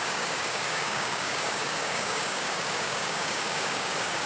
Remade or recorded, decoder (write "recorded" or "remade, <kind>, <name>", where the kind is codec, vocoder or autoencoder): remade, codec, DAC